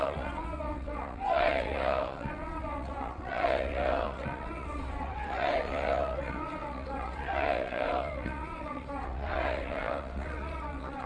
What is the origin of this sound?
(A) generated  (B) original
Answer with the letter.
A